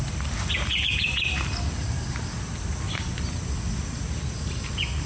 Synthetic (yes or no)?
no